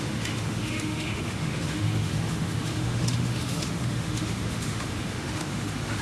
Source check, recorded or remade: remade